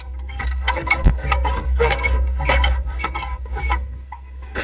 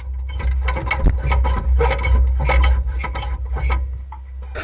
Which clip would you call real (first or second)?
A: second